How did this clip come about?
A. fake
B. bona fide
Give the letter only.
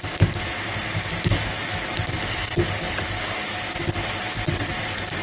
B